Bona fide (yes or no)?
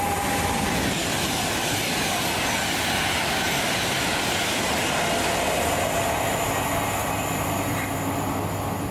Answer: yes